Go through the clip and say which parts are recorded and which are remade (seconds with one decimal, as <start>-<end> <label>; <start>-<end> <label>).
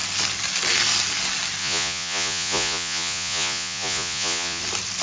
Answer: 0.0-1.6 recorded; 1.6-4.6 remade; 4.6-5.0 recorded